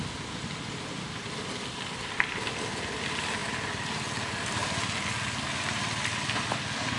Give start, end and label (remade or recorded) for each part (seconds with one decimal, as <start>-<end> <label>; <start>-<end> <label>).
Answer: 0.0-7.0 recorded